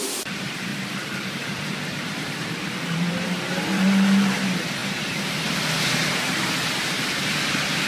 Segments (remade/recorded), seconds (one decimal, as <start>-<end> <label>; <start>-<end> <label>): 0.0-0.7 remade; 0.7-1.3 recorded; 1.3-7.9 remade